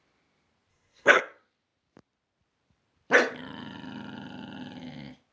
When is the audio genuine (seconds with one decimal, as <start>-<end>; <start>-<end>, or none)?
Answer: 0.0-0.7; 1.2-5.3